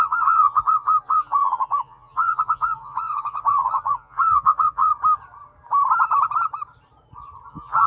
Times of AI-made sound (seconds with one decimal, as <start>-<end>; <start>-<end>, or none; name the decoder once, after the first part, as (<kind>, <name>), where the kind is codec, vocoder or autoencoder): 0.0-4.9 (vocoder, Vocos); 7.5-7.9